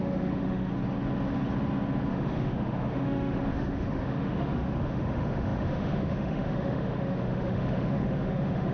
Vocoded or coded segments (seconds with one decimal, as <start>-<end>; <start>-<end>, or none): 0.0-0.7; 2.1-8.7